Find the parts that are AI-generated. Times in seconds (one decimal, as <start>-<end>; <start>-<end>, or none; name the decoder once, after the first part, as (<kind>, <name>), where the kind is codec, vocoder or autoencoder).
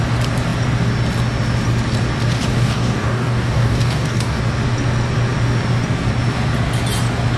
2.5-4.4 (codec, DAC)